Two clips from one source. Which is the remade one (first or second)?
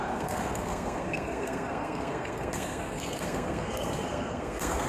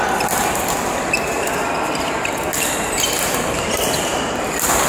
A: first